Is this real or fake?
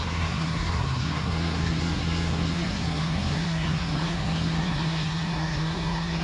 fake